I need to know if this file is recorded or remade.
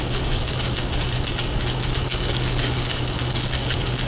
remade